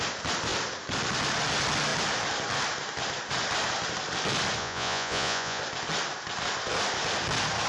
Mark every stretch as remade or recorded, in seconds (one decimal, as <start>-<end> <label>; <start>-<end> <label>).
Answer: 0.0-4.6 recorded; 4.6-5.6 remade; 5.6-7.7 recorded